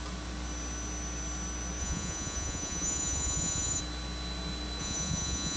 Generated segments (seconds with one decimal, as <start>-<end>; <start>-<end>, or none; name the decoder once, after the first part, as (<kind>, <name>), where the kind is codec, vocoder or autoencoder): 1.8-3.8 (vocoder, Vocos); 4.8-5.6